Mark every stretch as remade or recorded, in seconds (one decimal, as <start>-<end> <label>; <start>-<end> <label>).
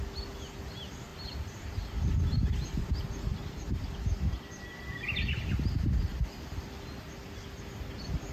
0.0-1.1 recorded; 1.1-4.5 remade; 4.5-8.3 recorded